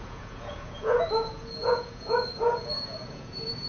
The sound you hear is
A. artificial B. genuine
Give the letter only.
A